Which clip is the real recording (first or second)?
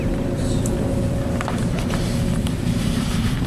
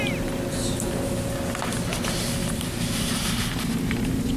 second